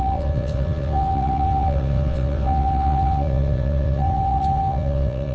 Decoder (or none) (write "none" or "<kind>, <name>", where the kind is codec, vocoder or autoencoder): vocoder, WaveNeXt